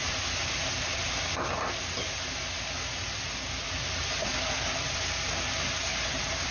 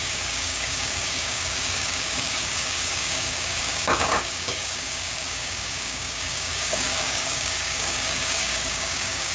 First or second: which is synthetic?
second